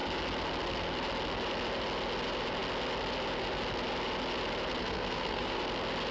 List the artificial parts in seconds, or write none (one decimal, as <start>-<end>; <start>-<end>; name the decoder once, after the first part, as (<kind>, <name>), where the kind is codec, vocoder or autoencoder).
4.8-5.6 (codec, SNAC)